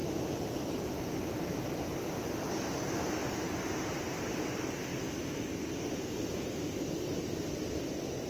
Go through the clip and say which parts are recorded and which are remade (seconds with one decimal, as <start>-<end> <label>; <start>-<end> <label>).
0.0-3.2 recorded; 3.2-4.0 remade; 4.0-8.3 recorded